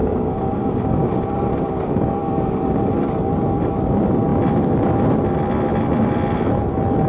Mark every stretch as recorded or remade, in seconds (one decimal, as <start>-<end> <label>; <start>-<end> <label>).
0.0-1.1 remade; 1.1-7.1 recorded